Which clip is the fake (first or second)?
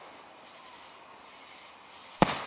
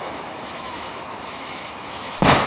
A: second